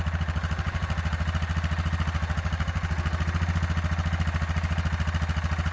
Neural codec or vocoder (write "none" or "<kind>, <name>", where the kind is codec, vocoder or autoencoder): none